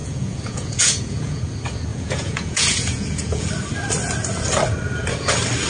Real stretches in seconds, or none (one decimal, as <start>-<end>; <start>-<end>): 1.4-1.9; 3.5-5.7